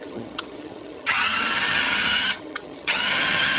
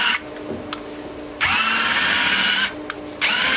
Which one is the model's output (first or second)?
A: first